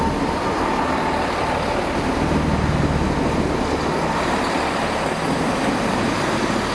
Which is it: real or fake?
real